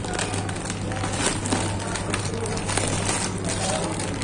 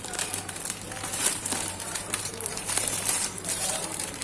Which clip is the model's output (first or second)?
second